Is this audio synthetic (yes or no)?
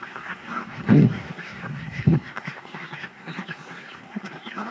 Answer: yes